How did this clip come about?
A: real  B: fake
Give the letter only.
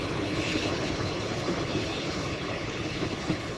B